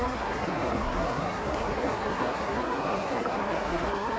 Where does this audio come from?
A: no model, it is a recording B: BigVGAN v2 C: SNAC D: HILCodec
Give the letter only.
C